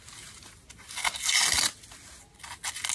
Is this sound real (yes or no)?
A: yes